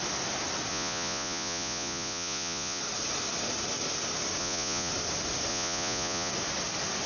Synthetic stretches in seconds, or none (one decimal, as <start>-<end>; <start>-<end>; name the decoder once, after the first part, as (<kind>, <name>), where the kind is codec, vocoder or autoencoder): 0.7-2.8 (vocoder, Vocos); 4.4-4.9; 5.5-6.3